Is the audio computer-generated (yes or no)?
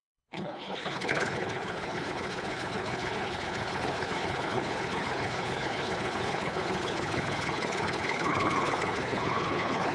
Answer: yes